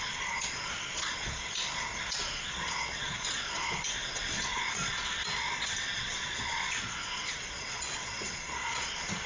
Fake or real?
fake